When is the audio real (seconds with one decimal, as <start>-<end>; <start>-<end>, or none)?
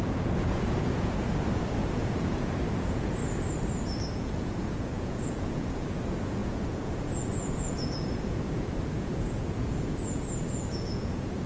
3.2-4.1